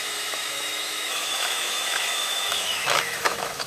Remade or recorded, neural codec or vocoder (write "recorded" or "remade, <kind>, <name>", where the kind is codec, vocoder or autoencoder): remade, autoencoder, DAC-VAE